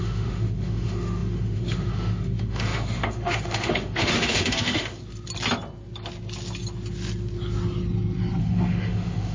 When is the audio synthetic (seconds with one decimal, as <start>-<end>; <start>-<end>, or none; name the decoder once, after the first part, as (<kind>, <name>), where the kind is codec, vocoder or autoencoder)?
0.0-5.0 (autoencoder, DAC-VAE); 8.4-9.3